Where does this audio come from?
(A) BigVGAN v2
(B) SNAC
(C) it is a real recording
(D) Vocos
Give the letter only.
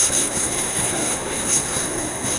B